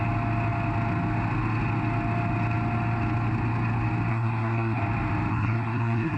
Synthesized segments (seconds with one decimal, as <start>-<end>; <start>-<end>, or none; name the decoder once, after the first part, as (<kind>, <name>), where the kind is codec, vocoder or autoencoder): 4.1-4.8 (codec, SNAC); 5.3-6.2